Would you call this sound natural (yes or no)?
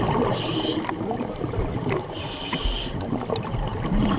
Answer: no